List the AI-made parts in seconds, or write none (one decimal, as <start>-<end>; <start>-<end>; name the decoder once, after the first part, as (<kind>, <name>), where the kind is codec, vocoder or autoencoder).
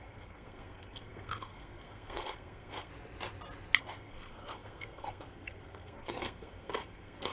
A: 0.0-2.9 (codec, SNAC); 3.8-7.3